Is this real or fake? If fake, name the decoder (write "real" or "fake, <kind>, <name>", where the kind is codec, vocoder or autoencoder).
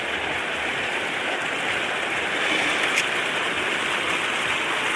real